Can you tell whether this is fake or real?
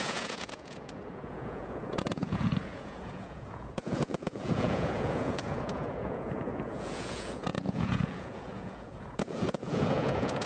fake